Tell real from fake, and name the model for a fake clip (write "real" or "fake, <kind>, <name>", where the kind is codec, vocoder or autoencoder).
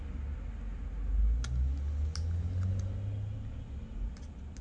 real